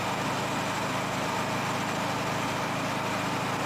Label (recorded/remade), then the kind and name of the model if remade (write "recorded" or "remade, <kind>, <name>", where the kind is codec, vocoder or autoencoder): recorded